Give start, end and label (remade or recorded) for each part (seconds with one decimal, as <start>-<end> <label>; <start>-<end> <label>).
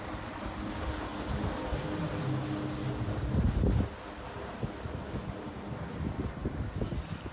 0.0-1.1 remade; 1.1-5.5 recorded; 5.5-6.4 remade; 6.4-7.3 recorded